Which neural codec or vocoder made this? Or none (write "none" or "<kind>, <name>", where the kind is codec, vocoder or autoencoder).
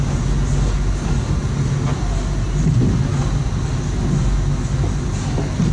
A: none